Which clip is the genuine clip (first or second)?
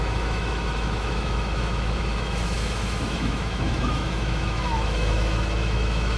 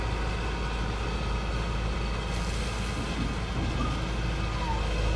second